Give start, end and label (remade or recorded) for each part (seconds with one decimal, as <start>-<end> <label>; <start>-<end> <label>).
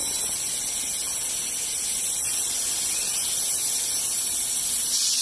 0.0-5.2 recorded